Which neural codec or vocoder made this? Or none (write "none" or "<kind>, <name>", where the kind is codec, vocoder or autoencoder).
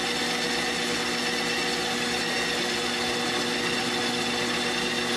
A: none